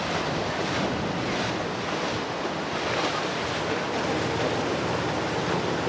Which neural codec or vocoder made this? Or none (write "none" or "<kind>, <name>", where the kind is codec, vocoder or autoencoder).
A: none